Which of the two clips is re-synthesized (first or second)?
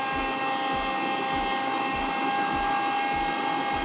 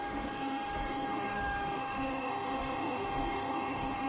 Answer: second